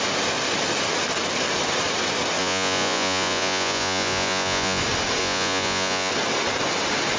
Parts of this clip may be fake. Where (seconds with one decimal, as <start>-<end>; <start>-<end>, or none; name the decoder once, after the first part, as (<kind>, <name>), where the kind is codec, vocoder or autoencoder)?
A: 2.4-4.8 (vocoder, Vocos); 5.2-6.1